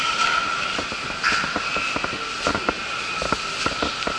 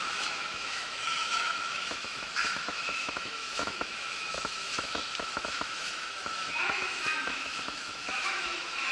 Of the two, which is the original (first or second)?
first